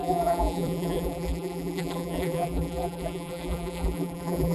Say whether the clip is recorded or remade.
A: remade